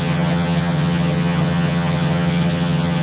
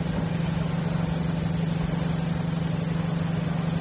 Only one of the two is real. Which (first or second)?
second